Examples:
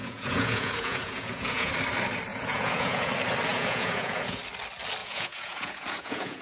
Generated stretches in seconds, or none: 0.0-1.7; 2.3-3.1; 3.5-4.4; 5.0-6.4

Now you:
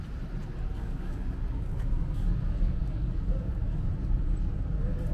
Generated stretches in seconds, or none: 0.8-3.9

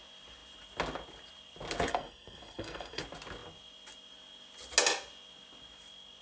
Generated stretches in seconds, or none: 1.9-3.0

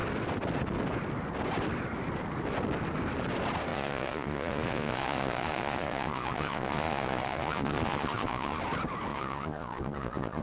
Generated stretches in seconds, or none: 3.7-8.6; 9.1-10.4

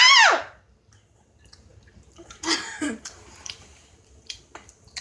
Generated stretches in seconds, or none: 1.7-4.4

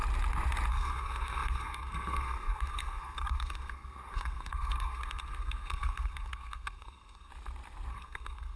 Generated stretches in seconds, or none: 0.7-7.3; 7.9-8.6